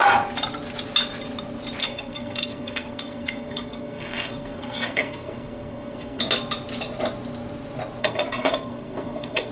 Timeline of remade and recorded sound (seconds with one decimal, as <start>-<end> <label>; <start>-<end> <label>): 0.0-1.8 recorded; 1.8-6.2 remade; 6.2-8.0 recorded; 8.0-9.5 remade